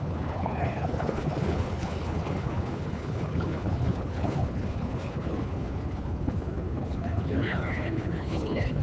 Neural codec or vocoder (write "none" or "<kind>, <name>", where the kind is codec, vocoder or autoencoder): codec, HILCodec